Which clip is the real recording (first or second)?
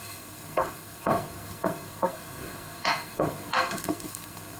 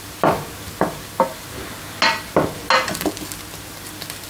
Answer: second